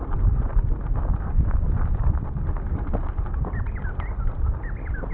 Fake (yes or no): no